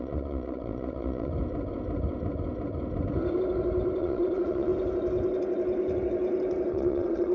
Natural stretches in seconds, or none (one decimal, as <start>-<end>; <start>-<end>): 1.3-4.0; 4.7-6.7